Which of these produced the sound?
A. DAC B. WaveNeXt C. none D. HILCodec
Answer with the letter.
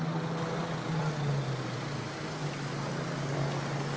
C